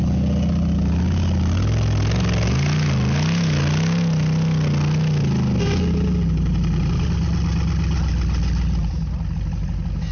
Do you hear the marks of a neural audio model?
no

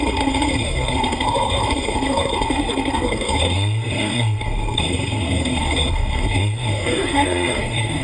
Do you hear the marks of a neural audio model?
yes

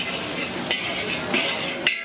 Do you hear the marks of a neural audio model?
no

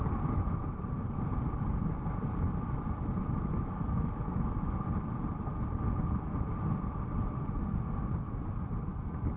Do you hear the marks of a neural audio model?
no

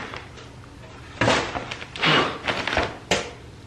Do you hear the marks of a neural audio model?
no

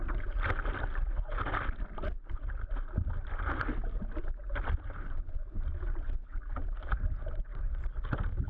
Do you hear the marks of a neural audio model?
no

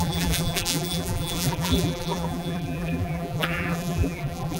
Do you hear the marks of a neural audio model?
yes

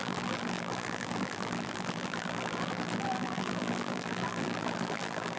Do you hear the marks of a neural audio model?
yes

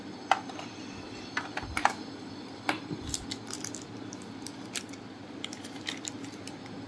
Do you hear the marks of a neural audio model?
no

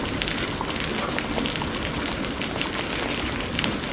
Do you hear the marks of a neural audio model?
no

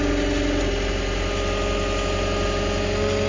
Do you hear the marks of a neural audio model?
no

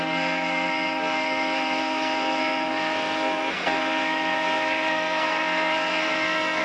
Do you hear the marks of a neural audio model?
yes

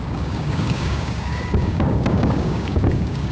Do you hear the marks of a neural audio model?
yes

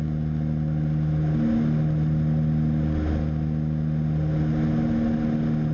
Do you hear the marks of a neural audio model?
no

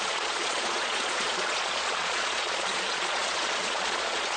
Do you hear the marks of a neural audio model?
yes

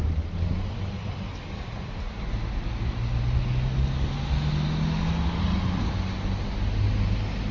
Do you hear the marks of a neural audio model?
no